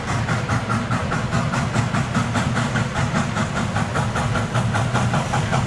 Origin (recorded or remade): recorded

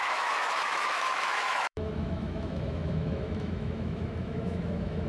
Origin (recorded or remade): remade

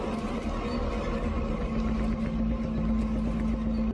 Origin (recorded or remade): recorded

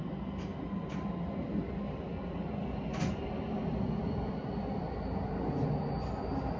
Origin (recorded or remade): recorded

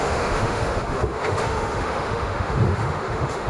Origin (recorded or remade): remade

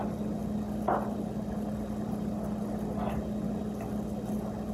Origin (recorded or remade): recorded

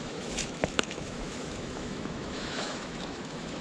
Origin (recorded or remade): remade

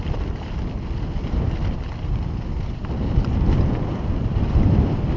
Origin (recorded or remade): recorded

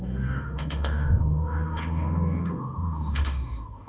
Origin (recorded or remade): remade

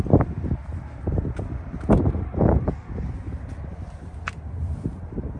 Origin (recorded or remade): recorded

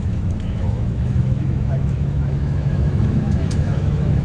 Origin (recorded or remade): remade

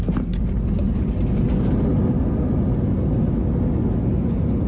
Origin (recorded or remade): recorded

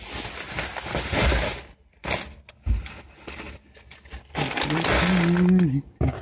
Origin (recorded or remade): recorded